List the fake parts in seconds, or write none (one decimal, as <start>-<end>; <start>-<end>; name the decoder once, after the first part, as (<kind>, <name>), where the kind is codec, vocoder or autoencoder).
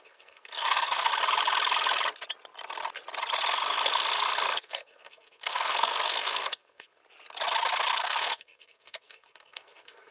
0.0-1.1 (codec, SNAC); 4.6-7.0; 8.0-10.1